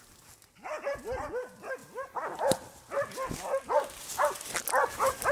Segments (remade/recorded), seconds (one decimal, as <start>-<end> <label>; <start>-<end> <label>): 0.0-5.3 recorded